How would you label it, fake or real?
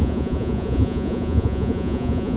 fake